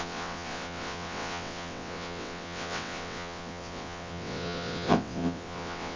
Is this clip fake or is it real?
fake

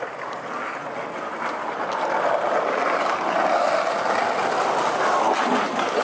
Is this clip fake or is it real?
real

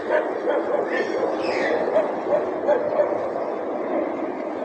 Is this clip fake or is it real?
real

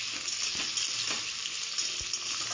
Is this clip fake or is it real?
real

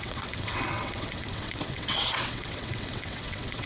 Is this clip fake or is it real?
fake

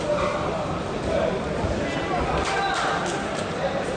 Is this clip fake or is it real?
real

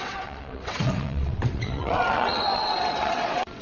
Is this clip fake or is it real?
fake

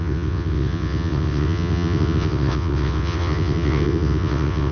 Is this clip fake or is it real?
fake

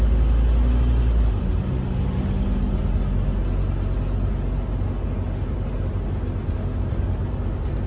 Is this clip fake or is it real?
real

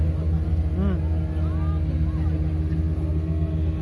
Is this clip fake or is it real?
real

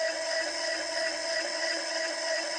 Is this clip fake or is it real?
fake